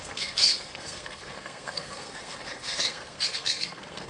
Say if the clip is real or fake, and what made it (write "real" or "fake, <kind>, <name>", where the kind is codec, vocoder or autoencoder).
fake, codec, SNAC